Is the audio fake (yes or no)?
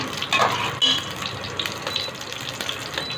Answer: no